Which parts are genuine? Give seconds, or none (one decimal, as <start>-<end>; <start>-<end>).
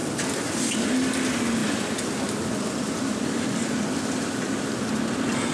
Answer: 0.0-5.5